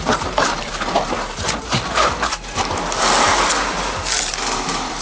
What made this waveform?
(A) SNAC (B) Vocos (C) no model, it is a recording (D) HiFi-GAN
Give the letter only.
C